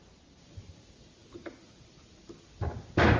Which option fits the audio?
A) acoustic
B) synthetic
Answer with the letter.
A